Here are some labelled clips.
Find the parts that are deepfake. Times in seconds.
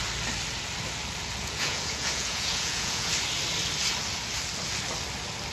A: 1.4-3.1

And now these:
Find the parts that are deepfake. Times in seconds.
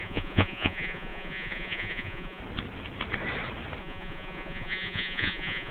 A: 0.0-2.4; 3.8-5.7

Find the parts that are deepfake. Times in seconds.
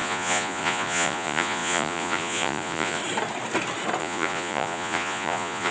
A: 0.0-3.0; 4.0-5.7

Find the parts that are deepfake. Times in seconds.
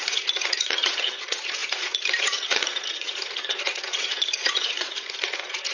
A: 0.0-5.7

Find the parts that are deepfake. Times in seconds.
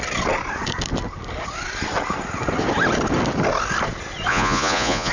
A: 4.3-5.1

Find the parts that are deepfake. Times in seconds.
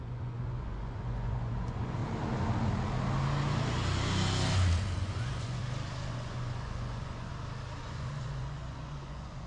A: 0.0-2.0; 5.0-5.6; 6.1-7.3; 7.8-9.5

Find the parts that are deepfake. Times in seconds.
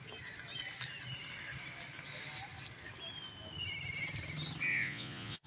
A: 4.7-5.5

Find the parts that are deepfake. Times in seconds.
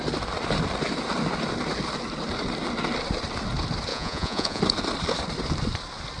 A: 3.9-4.6